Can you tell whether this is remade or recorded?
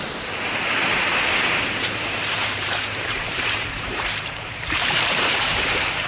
remade